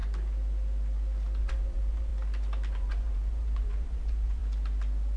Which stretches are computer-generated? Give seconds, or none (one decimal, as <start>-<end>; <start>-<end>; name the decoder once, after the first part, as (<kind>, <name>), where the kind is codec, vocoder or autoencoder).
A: 1.4-2.1 (vocoder, Vocos); 2.7-4.4